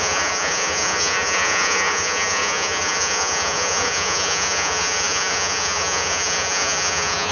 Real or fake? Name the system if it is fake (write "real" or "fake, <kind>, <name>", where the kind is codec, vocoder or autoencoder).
fake, vocoder, Vocos